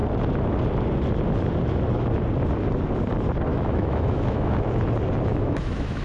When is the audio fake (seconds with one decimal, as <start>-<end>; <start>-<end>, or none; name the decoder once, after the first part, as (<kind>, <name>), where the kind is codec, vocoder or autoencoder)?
3.5-4.7 (autoencoder, DAC-VAE); 5.3-6.0